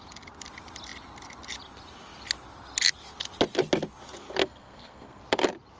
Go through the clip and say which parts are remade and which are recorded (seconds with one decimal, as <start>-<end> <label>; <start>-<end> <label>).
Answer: 0.0-4.4 recorded; 4.4-5.2 remade; 5.2-5.8 recorded

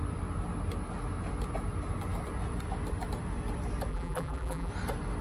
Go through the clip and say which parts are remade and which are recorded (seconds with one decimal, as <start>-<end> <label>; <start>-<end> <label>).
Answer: 0.0-3.9 recorded; 3.9-4.7 remade; 4.7-5.2 recorded

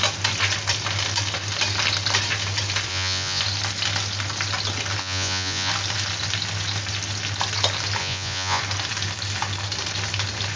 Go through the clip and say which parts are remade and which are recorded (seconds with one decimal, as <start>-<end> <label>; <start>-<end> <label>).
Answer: 0.0-2.9 recorded; 2.9-3.4 remade; 3.4-5.0 recorded; 5.0-5.7 remade; 5.7-8.0 recorded; 8.0-8.6 remade; 8.6-10.6 recorded

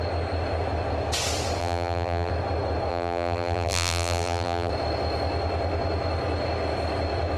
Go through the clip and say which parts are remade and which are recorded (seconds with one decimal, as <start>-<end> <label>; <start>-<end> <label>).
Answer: 0.0-1.6 recorded; 1.6-2.3 remade; 2.3-2.9 recorded; 2.9-4.7 remade; 4.7-7.4 recorded

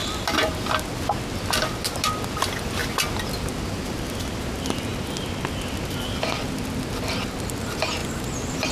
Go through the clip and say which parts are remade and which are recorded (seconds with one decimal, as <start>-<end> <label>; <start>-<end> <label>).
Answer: 0.0-0.5 remade; 0.5-8.0 recorded; 8.0-8.7 remade

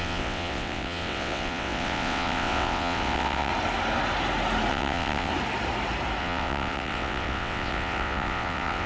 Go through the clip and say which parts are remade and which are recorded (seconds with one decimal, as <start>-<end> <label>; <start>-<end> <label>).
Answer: 0.0-3.5 remade; 3.5-4.7 recorded; 4.7-5.3 remade; 5.3-6.2 recorded; 6.2-8.9 remade